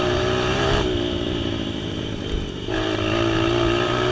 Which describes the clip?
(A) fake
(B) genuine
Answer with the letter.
A